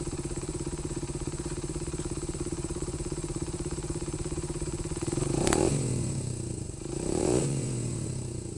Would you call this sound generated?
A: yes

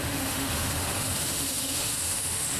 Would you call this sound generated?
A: yes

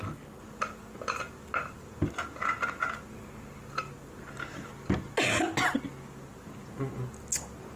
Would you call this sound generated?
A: no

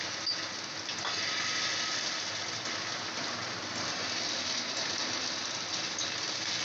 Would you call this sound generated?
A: no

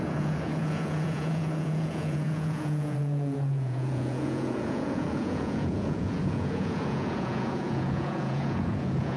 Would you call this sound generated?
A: yes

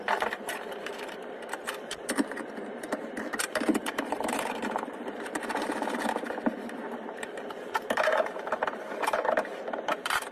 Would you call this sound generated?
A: yes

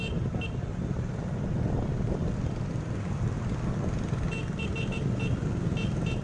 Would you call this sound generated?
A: no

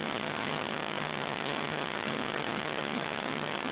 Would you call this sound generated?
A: yes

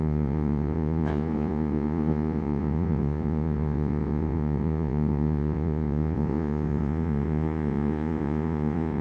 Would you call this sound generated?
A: yes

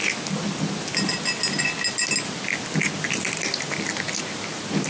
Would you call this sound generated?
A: no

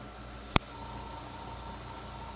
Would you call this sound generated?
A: no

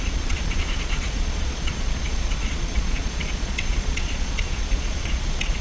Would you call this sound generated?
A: yes